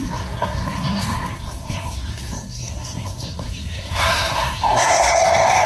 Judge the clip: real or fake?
fake